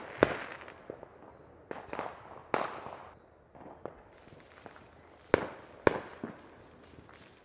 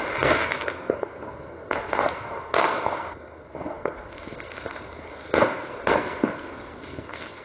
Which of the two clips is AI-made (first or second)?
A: second